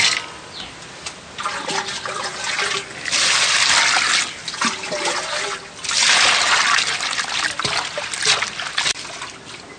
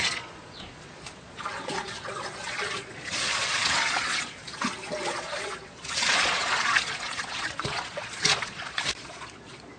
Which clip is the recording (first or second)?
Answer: first